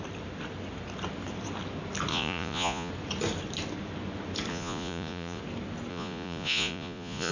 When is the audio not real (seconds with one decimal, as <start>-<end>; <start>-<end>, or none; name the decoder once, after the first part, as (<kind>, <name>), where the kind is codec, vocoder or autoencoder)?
2.1-2.9 (vocoder, Vocos); 4.5-5.4; 5.9-7.3